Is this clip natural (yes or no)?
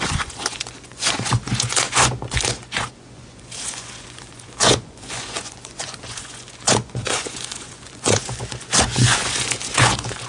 no